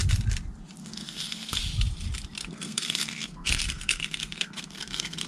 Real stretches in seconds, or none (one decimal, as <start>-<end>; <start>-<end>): 0.0-0.8; 1.6-2.4